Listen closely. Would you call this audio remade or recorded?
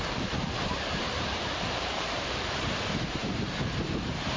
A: remade